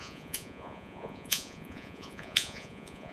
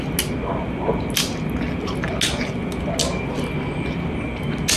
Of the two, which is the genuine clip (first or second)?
second